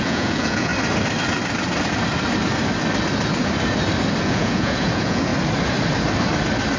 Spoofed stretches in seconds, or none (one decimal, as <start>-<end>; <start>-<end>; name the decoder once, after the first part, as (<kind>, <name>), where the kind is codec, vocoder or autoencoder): 0.0-0.7 (vocoder, Vocos); 4.2-5.3